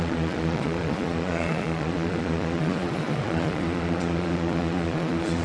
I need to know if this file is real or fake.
fake